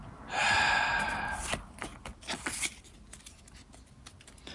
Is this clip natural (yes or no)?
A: yes